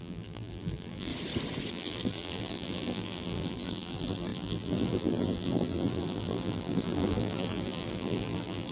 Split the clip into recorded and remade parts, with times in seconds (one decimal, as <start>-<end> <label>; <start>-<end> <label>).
0.0-1.1 remade; 1.1-1.7 recorded; 1.7-8.7 remade